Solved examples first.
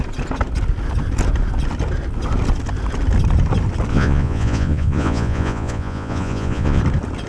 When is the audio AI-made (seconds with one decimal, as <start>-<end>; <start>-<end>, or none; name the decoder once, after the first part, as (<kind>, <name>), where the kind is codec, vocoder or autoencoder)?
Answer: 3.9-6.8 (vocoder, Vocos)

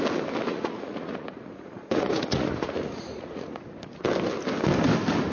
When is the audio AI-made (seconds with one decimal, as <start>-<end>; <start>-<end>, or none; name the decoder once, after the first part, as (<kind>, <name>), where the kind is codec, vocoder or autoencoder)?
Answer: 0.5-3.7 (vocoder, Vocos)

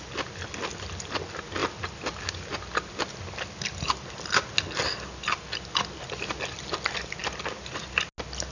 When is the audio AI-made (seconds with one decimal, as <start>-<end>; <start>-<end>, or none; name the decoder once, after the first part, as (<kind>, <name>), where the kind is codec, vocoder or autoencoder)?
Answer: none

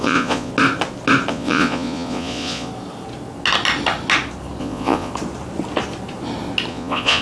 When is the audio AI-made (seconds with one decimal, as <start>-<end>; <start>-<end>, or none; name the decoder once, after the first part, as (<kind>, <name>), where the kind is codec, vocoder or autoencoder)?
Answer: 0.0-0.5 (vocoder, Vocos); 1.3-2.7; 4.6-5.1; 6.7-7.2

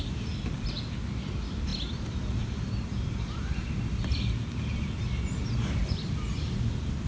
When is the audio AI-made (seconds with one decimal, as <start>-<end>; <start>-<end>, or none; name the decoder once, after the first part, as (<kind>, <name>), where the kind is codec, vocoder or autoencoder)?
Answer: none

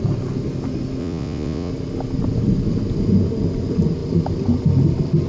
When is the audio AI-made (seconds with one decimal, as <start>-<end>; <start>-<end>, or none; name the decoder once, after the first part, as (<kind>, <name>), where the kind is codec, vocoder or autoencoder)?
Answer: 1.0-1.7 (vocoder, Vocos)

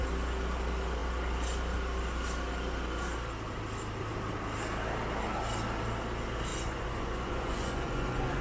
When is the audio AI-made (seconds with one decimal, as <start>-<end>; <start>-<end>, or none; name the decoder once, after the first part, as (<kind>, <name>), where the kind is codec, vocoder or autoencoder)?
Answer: 6.5-8.4 (vocoder, Vocos)